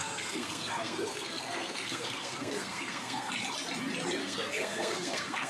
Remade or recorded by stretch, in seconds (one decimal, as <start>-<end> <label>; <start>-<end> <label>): 0.0-3.3 remade; 3.3-4.2 recorded; 4.2-5.5 remade